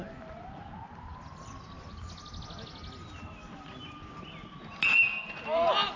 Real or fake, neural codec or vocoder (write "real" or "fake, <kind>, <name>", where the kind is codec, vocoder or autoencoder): real